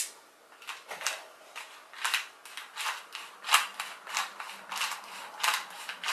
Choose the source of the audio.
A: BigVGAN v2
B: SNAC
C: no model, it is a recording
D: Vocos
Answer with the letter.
C